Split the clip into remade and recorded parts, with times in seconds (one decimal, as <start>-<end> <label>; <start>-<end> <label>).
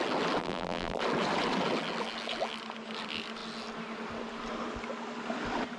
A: 0.0-0.4 recorded; 0.4-1.0 remade; 1.0-5.8 recorded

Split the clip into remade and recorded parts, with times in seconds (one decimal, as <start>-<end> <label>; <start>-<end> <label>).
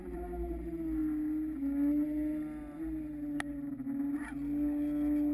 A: 0.0-5.3 recorded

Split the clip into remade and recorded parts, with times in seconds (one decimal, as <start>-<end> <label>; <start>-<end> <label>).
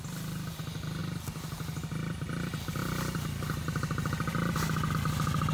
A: 0.0-5.5 recorded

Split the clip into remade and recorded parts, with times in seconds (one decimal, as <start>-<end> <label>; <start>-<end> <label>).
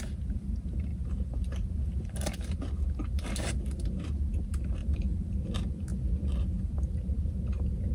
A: 0.0-5.9 remade; 5.9-6.6 recorded; 6.6-7.9 remade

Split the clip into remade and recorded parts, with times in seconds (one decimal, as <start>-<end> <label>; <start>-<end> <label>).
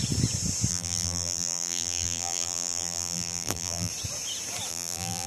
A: 0.0-0.7 recorded; 0.7-3.9 remade; 3.9-4.7 recorded; 4.7-5.3 remade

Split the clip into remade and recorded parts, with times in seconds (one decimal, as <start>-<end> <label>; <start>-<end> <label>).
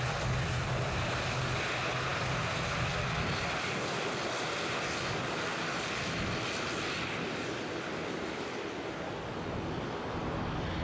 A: 0.0-2.1 recorded; 2.1-2.9 remade; 2.9-10.8 recorded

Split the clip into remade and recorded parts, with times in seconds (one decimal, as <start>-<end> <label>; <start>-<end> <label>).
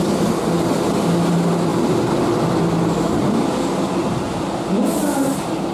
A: 0.0-1.7 recorded; 1.7-2.6 remade; 2.6-5.7 recorded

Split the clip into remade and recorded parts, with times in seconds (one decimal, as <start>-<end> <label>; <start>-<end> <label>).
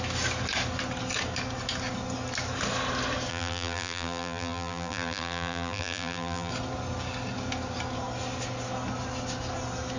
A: 0.0-3.3 recorded; 3.3-6.5 remade; 6.5-10.0 recorded